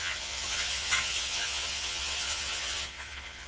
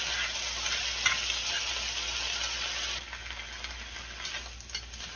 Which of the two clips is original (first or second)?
second